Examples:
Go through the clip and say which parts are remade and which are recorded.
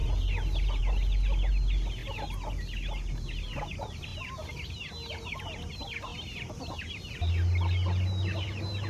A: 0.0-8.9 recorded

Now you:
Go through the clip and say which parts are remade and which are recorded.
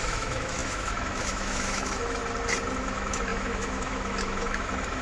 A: 0.0-2.2 remade; 2.2-2.8 recorded; 2.8-5.0 remade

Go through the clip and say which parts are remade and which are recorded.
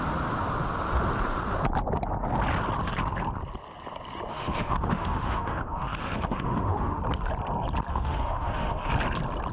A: 0.0-4.3 recorded; 4.3-7.0 remade; 7.0-7.9 recorded; 7.9-8.9 remade; 8.9-9.5 recorded